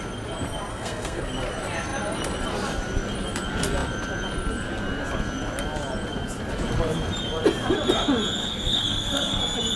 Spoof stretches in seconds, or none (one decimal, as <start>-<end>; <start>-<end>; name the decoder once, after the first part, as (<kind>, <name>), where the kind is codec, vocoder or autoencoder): 0.7-1.2 (codec, SNAC); 8.4-9.4